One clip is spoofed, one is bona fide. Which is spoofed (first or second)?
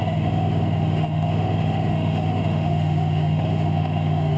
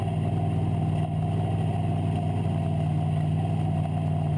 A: first